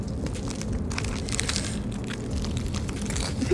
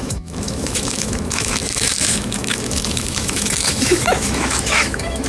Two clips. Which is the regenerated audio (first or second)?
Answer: second